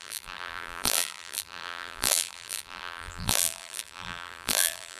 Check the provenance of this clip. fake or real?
fake